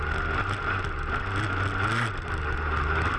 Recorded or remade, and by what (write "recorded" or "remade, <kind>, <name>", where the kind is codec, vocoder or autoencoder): recorded